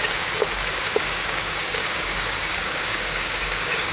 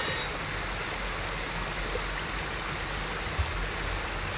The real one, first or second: second